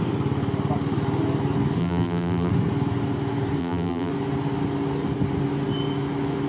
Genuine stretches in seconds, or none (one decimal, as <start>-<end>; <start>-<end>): 0.0-1.8; 2.5-3.6; 4.1-6.5